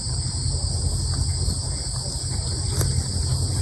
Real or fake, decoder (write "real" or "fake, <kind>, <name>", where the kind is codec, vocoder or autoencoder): real